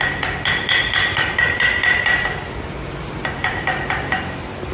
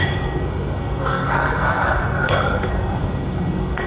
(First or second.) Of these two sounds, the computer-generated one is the second